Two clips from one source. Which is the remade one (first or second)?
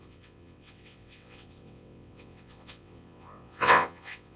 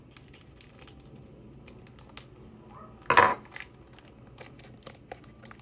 first